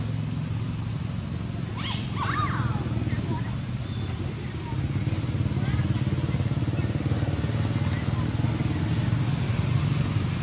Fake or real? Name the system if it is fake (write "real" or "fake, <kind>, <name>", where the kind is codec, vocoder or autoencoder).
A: real